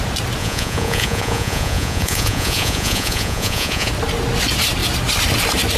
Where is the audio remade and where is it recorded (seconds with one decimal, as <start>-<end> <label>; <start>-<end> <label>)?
0.0-0.4 recorded; 0.4-3.9 remade; 3.9-5.8 recorded